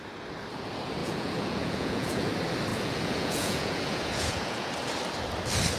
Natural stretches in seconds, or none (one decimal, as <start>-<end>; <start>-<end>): 0.0-1.0; 2.3-2.7; 4.7-5.8